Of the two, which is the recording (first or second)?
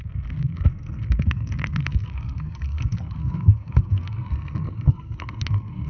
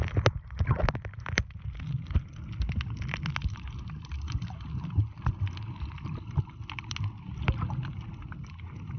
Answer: second